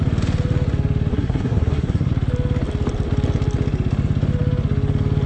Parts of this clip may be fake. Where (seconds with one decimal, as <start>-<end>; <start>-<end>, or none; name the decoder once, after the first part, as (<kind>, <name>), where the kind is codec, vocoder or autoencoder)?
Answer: 1.1-2.1 (codec, SNAC)